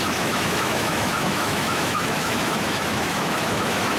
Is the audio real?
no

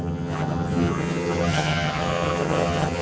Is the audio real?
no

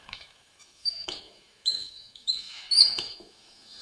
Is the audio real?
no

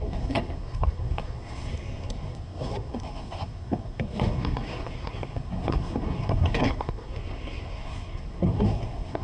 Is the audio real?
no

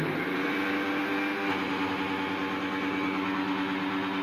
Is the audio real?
yes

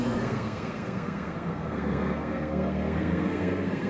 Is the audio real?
no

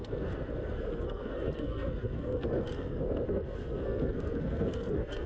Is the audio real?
no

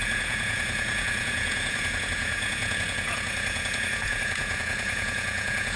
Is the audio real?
no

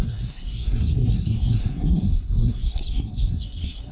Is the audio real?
no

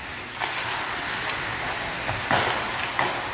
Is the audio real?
yes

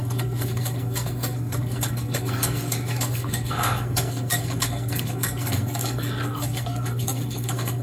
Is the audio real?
no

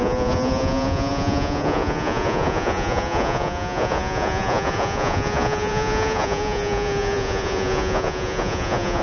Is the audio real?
no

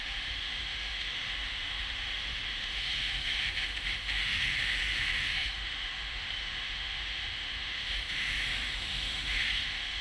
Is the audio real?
no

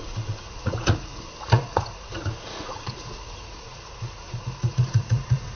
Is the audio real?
no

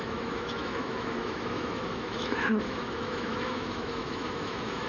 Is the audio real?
no